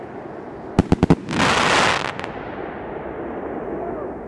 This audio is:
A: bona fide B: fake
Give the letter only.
A